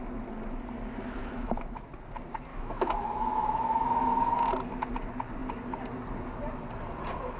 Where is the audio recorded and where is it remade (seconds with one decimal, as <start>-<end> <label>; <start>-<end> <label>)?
0.0-1.2 recorded; 1.2-1.9 remade; 1.9-2.5 recorded; 2.5-4.5 remade; 4.5-7.4 recorded